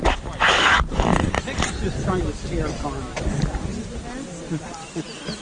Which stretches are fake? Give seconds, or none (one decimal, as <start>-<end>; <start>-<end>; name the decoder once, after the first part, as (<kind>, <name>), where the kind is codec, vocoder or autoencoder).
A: 0.7-1.4 (vocoder, BigVGAN v2); 3.7-4.9